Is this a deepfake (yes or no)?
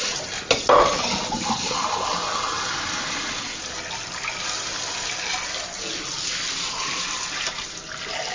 no